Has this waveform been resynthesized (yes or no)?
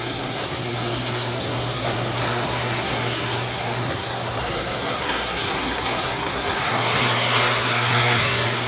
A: yes